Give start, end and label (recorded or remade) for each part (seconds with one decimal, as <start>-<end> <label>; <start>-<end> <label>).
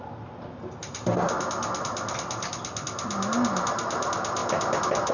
0.0-5.1 recorded